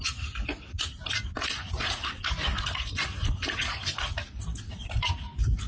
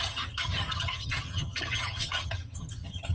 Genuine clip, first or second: first